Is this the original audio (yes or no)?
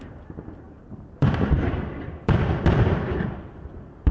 no